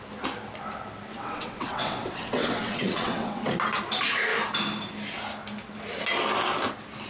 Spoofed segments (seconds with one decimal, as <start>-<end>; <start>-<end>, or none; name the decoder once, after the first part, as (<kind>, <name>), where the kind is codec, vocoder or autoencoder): 1.1-3.4 (vocoder, WaveNeXt)